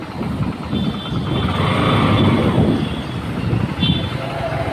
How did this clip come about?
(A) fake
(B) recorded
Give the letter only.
B